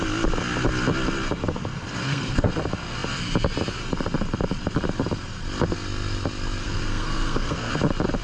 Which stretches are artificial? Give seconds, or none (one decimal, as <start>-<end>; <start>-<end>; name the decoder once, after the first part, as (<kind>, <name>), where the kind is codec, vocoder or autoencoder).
2.0-2.5 (codec, SNAC); 6.6-7.7